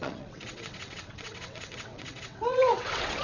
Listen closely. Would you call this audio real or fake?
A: fake